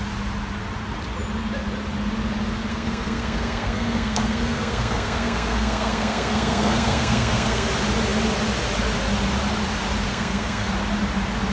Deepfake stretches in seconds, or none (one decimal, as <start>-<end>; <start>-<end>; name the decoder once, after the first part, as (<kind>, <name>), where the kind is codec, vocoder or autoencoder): 2.7-7.7 (codec, SNAC); 10.1-10.7